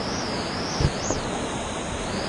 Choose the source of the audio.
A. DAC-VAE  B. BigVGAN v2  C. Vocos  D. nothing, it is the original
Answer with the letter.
D